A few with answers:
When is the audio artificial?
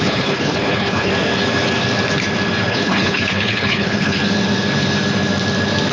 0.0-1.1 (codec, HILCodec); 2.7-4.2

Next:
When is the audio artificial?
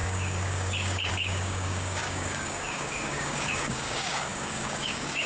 0.0-5.3 (codec, DAC)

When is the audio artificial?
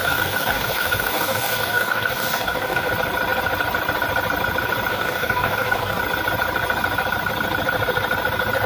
0.0-2.9 (codec, DAC); 4.9-6.0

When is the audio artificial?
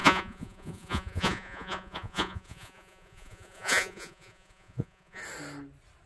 0.0-5.2 (vocoder, Vocos)